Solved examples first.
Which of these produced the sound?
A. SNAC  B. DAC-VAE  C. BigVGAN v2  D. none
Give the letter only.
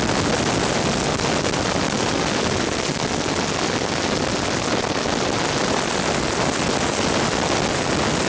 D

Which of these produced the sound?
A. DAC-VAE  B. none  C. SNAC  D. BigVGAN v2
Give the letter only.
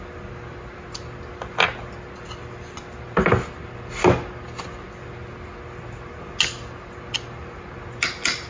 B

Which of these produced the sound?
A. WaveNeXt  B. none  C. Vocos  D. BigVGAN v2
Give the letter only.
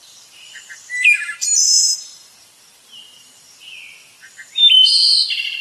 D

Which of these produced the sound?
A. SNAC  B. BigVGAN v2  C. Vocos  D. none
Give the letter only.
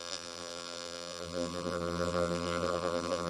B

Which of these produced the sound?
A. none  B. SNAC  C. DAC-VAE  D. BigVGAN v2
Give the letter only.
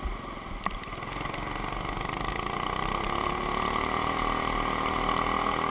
A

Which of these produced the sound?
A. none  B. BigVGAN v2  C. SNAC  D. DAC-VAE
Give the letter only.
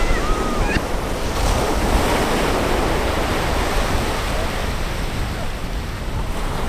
B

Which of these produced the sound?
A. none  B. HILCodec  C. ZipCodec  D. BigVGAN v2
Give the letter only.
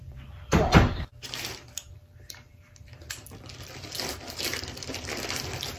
D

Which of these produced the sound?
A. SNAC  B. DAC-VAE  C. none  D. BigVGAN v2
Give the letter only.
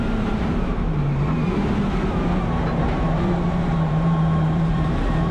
D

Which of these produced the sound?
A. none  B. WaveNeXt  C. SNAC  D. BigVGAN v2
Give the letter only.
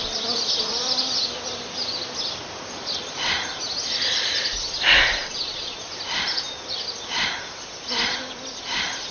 A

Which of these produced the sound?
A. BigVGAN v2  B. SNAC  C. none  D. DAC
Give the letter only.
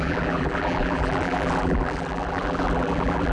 A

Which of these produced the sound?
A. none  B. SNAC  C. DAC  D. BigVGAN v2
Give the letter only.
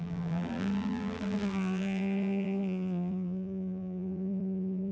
D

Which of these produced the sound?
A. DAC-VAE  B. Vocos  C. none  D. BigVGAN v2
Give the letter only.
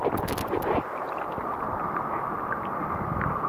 C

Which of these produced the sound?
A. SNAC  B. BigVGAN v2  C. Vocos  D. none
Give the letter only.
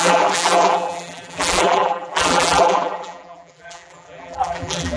B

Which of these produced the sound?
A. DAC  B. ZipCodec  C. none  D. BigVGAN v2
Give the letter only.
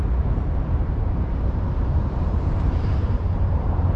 D